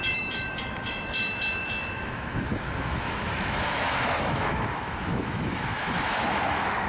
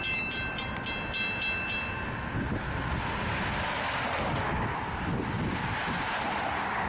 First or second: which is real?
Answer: second